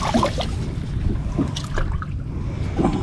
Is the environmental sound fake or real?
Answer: real